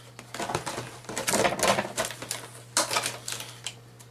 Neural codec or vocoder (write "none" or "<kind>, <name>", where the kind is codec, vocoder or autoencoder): none